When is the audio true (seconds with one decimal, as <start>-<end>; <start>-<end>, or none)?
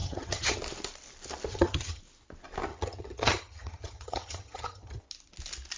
0.6-1.5; 2.0-2.7; 5.0-5.8